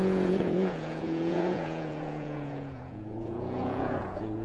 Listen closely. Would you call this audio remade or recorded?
remade